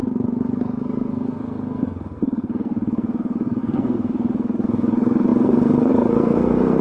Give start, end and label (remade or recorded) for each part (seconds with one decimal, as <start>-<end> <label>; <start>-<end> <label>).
0.0-6.8 remade